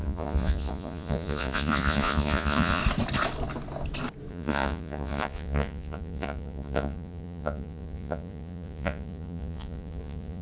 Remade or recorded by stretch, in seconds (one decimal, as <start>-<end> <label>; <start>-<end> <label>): 0.0-2.8 remade; 2.8-4.3 recorded; 4.3-10.4 remade